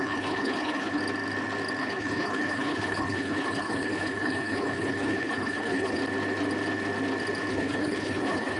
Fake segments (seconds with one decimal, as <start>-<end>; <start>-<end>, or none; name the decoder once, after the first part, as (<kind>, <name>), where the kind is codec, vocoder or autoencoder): 0.0-1.0 (codec, HILCodec); 1.8-6.0; 7.5-8.6